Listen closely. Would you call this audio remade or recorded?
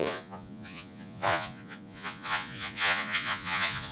remade